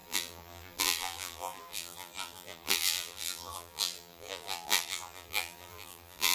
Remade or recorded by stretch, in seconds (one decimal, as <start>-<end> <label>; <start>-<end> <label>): 0.0-6.3 remade